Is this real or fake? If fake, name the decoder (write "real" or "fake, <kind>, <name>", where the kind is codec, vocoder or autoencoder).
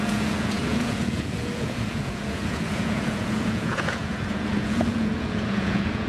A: fake, vocoder, Vocos